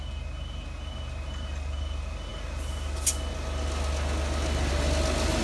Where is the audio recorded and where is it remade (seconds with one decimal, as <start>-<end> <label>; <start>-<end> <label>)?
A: 0.0-5.4 recorded